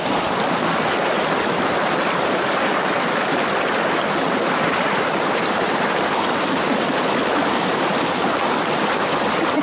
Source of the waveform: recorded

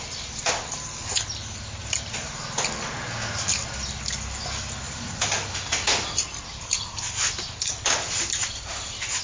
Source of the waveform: recorded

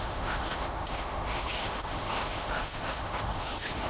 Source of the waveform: remade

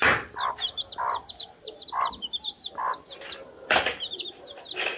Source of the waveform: recorded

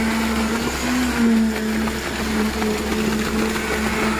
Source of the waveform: recorded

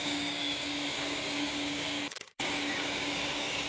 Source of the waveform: remade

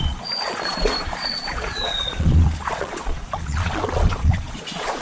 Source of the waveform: remade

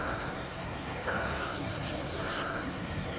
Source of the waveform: remade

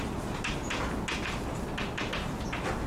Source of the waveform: recorded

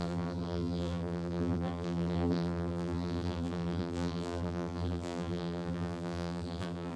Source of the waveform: remade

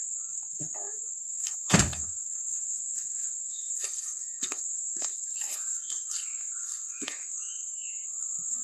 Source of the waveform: remade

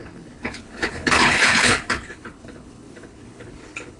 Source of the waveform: remade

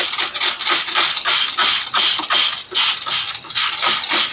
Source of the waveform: recorded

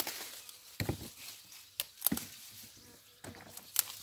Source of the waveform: recorded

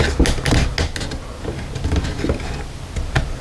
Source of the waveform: recorded